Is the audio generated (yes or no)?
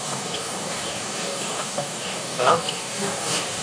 yes